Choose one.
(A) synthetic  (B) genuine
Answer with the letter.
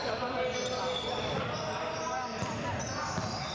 B